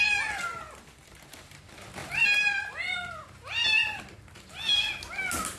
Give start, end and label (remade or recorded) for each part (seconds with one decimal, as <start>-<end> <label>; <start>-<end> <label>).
0.0-2.0 recorded; 2.0-4.0 remade; 4.0-5.6 recorded